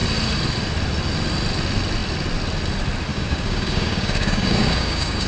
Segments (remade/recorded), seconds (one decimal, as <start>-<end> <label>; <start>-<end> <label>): 0.0-3.1 recorded; 3.1-5.3 remade